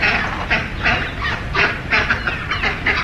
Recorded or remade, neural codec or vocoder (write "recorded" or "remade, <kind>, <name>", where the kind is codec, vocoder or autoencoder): remade, vocoder, BigVGAN v2